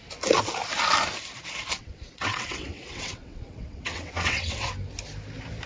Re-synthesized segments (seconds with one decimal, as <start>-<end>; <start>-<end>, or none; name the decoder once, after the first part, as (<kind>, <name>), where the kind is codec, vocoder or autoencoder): 1.8-4.7 (vocoder, WaveNeXt)